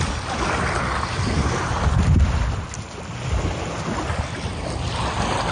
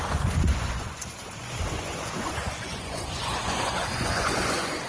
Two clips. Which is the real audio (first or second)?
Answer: first